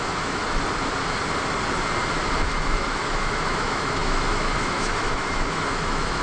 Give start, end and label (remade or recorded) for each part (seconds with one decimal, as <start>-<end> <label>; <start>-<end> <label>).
0.0-0.4 remade; 0.4-2.4 recorded; 2.4-6.2 remade